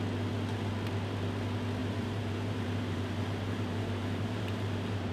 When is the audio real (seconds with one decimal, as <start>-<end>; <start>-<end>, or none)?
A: 0.0-1.8